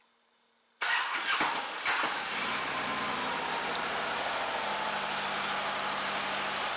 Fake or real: fake